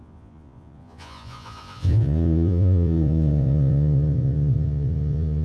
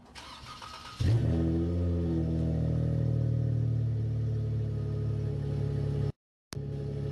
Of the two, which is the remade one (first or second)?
first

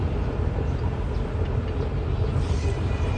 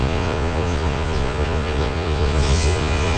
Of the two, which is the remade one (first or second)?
second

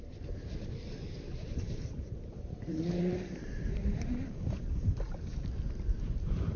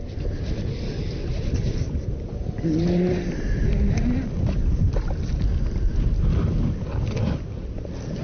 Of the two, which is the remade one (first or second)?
first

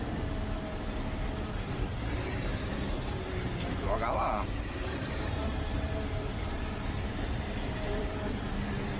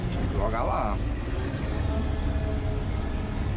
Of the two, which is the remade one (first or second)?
first